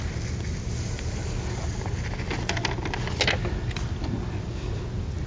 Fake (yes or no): no